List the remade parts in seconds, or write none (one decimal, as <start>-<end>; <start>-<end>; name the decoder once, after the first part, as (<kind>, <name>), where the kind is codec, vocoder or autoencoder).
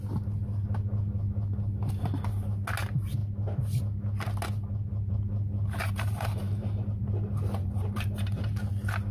5.8-8.7 (vocoder, BigVGAN v2)